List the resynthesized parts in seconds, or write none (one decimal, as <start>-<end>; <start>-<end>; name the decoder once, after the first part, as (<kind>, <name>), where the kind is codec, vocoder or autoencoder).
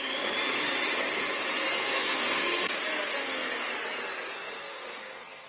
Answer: 1.7-2.8 (codec, SNAC); 3.2-3.7; 4.3-5.5